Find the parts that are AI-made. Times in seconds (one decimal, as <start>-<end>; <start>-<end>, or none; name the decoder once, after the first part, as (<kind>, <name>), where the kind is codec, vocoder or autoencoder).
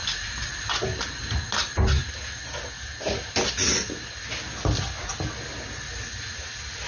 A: none